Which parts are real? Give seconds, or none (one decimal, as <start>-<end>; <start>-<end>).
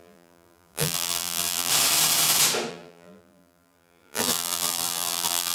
1.7-2.7